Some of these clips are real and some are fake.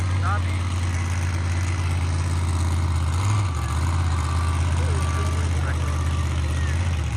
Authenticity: real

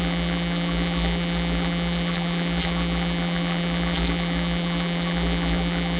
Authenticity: fake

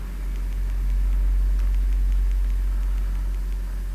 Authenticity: real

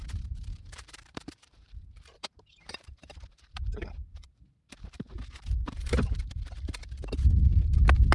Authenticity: fake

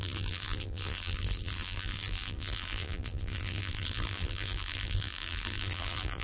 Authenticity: fake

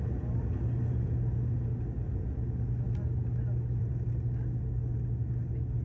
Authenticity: real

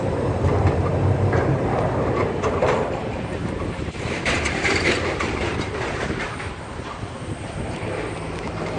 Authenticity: fake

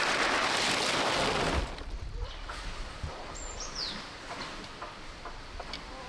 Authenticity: real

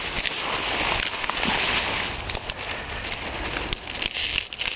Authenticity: real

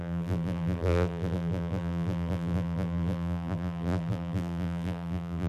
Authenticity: fake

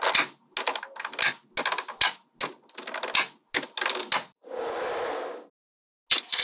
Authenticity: real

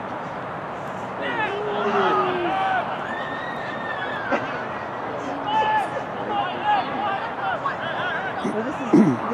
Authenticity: real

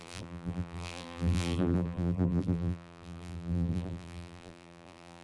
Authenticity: fake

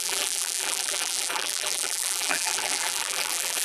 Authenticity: fake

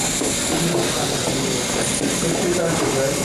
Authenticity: real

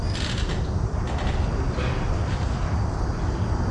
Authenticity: real